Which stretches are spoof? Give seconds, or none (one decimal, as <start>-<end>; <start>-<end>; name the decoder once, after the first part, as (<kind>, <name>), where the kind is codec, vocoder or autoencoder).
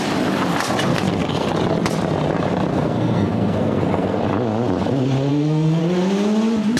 0.9-1.5 (codec, SNAC); 2.7-4.2; 5.3-5.8